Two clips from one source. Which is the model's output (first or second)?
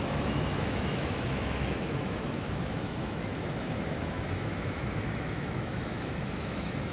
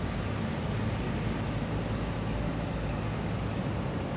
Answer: first